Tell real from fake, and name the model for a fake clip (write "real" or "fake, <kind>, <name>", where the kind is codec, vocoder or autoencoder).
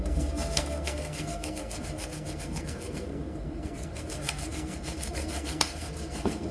fake, codec, SNAC